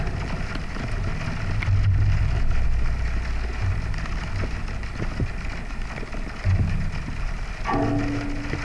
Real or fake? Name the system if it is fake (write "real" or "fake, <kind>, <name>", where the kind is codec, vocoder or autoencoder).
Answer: real